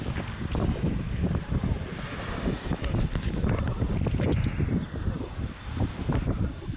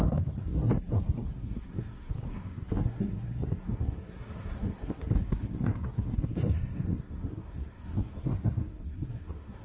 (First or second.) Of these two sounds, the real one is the first